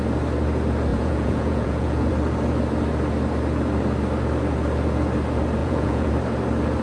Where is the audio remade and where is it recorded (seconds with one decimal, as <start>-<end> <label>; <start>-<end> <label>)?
0.0-0.9 recorded; 0.9-2.1 remade; 2.1-5.6 recorded; 5.6-6.1 remade; 6.1-6.8 recorded